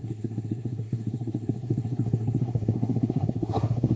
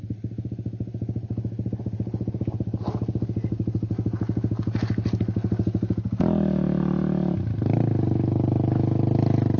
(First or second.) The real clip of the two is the second